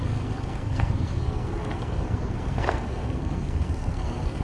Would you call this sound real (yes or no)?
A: no